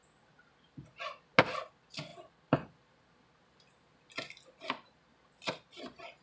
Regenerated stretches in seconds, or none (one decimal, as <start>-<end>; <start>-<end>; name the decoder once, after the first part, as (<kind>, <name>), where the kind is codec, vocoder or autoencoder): none